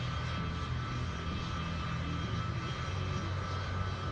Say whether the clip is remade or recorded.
recorded